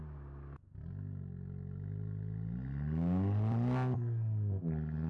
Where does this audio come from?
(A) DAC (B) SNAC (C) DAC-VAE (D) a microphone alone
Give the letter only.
D